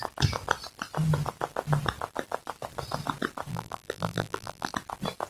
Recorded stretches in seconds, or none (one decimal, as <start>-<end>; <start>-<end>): 0.0-3.5; 4.7-5.3